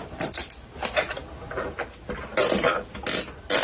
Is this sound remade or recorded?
recorded